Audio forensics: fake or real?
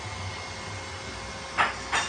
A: real